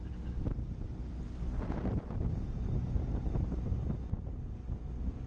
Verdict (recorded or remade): recorded